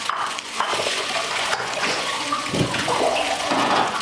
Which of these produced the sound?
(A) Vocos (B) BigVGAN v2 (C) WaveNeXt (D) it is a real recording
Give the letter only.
A